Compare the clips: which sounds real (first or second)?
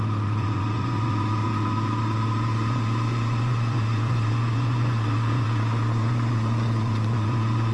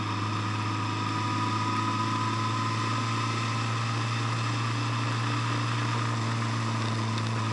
second